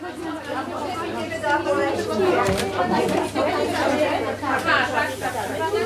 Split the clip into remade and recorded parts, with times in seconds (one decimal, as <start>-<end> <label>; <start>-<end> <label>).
0.0-5.9 recorded